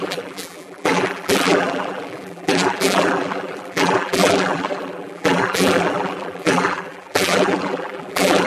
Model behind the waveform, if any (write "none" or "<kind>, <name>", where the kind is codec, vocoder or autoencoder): vocoder, BigVGAN v2